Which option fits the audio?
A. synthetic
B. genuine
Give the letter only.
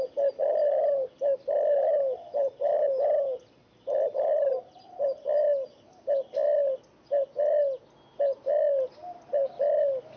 B